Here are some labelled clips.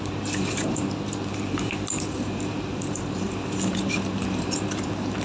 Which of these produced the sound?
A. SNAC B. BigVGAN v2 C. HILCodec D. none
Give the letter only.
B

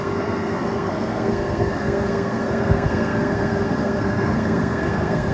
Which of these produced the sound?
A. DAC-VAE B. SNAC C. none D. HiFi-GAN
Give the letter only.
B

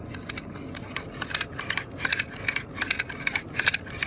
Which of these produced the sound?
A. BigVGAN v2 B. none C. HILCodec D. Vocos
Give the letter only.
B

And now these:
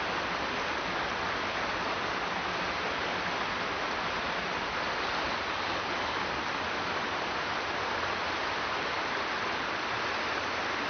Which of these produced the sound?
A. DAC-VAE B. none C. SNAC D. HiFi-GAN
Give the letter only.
B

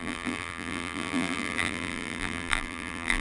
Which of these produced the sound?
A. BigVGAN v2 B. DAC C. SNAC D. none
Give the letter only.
A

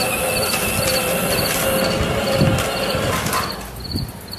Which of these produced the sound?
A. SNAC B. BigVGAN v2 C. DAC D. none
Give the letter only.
D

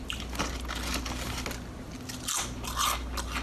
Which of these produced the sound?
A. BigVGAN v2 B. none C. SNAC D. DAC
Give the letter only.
B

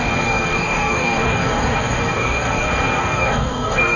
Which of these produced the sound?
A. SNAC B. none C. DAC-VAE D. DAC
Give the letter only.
D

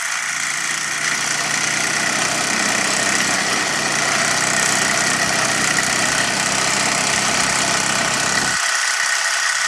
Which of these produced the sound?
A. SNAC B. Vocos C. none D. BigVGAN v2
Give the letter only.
C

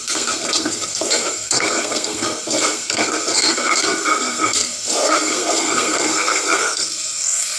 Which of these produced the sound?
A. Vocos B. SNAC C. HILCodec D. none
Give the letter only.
B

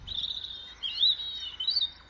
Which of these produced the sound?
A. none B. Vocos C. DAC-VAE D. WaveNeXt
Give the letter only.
A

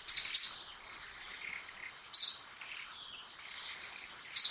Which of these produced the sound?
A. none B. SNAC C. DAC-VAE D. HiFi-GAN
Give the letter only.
A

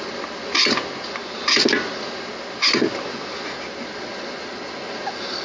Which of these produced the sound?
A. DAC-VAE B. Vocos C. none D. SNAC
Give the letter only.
C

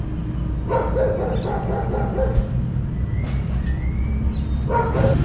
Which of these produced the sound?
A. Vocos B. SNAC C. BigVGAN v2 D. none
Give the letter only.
D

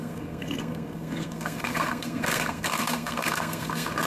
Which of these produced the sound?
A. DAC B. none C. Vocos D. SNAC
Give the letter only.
D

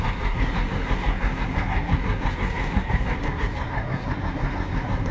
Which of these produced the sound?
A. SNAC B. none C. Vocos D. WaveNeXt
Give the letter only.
A